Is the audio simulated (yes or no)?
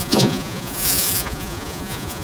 yes